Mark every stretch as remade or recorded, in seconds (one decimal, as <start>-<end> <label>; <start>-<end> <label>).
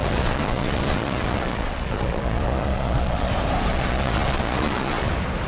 0.0-3.3 remade; 3.3-3.7 recorded; 3.7-5.1 remade; 5.1-5.5 recorded